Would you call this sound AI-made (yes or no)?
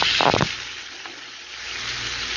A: no